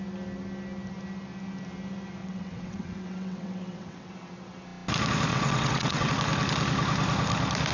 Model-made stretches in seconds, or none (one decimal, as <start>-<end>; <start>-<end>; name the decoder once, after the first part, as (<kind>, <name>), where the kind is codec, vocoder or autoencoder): 2.2-4.1 (vocoder, WaveNeXt); 5.3-6.1

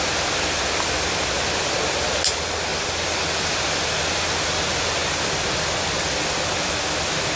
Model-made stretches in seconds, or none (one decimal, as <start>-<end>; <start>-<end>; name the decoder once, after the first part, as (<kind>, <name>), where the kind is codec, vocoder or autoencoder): none